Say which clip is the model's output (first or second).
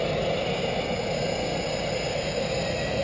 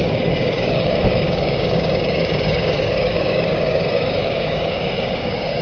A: second